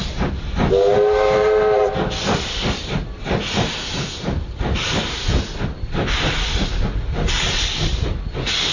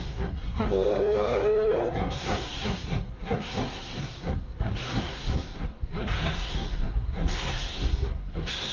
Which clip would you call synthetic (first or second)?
second